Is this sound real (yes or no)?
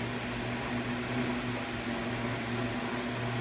yes